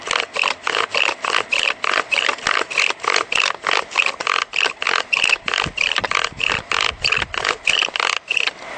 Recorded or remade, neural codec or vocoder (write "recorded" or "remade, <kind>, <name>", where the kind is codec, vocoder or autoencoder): recorded